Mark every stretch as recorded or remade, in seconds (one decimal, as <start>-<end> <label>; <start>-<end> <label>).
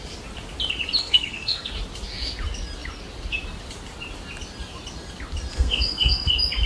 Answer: 0.0-1.0 recorded; 1.0-1.7 remade; 1.7-5.5 recorded; 5.5-6.3 remade; 6.3-6.7 recorded